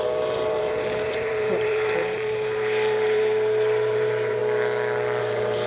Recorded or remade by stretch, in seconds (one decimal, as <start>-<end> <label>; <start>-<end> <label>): 0.0-4.4 remade; 4.4-5.2 recorded; 5.2-5.7 remade